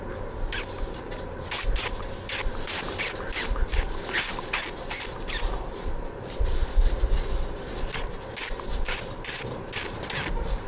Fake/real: real